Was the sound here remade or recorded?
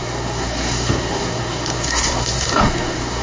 remade